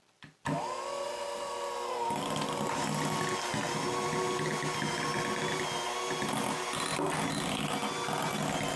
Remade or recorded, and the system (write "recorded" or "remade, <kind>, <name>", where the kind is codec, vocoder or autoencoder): recorded